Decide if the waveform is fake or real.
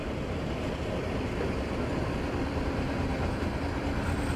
real